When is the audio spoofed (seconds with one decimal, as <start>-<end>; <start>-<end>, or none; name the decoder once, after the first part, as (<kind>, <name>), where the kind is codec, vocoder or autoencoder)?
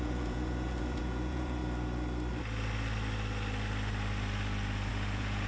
0.0-1.6 (vocoder, Vocos); 4.9-5.5